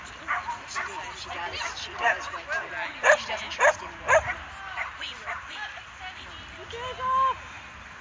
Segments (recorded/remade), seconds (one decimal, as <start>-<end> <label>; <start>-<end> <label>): 0.0-2.6 recorded; 2.6-3.4 remade; 3.4-8.0 recorded